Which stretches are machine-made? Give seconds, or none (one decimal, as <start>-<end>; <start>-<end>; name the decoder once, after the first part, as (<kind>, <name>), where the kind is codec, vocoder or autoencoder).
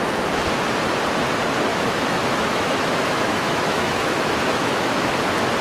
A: 1.7-5.1 (autoencoder, DAC-VAE)